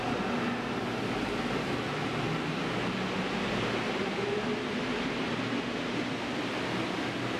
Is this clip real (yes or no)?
yes